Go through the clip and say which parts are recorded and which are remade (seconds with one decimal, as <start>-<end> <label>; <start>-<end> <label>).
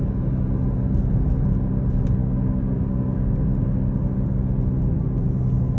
0.0-2.2 recorded; 2.2-3.5 remade; 3.5-5.8 recorded